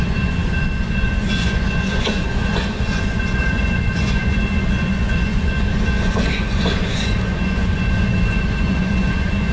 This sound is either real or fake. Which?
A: fake